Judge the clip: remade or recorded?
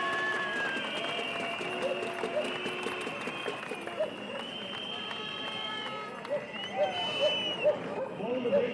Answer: recorded